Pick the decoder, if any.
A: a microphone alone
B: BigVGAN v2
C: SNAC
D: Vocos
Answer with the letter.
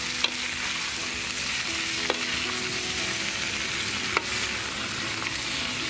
A